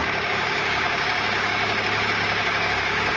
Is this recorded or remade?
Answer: remade